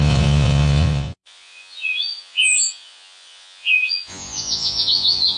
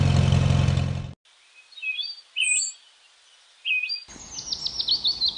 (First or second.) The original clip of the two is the second